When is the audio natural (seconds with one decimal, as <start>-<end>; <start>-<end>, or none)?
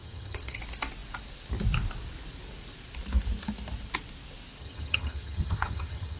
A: 0.6-4.6